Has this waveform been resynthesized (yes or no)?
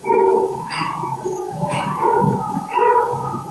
yes